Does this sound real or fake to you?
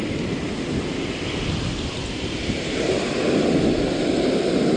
real